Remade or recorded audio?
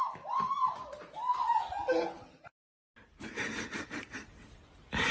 recorded